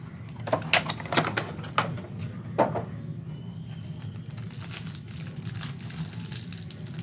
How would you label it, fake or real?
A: real